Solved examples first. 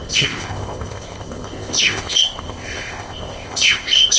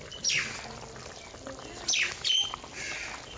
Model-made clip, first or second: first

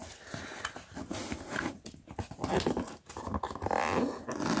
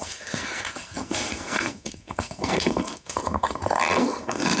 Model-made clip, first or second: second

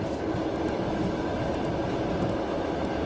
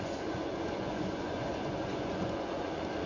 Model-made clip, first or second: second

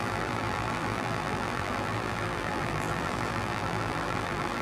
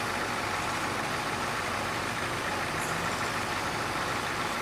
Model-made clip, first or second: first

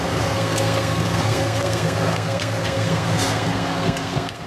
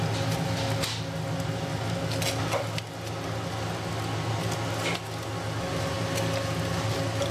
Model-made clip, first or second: first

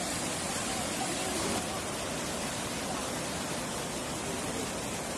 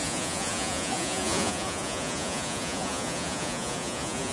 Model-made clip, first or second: second